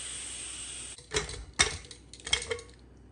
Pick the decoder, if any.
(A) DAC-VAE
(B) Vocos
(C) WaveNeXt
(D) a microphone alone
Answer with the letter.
D